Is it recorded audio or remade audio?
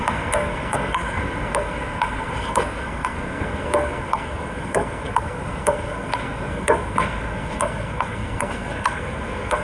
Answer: remade